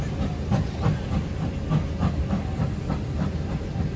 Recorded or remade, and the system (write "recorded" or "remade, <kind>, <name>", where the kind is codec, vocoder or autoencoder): recorded